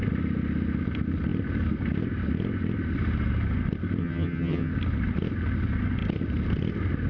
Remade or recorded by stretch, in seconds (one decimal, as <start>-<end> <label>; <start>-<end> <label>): 0.0-4.0 recorded; 4.0-4.7 remade; 4.7-7.1 recorded